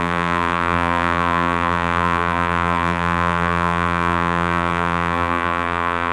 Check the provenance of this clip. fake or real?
fake